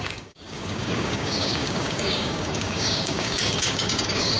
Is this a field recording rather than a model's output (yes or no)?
no